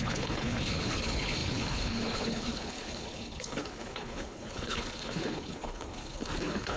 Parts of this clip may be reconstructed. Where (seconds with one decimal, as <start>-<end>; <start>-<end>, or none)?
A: 0.0-6.8